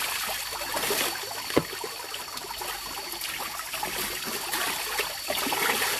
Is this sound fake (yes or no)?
no